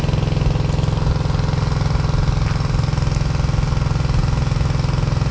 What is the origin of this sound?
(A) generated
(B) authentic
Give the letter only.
B